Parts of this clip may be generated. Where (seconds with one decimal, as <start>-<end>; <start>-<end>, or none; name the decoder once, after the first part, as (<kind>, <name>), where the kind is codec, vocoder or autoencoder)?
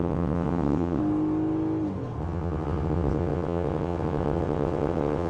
0.0-1.0 (vocoder, WaveNeXt); 2.2-5.3